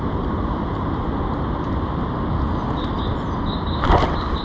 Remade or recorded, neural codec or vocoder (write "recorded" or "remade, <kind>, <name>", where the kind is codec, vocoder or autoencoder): recorded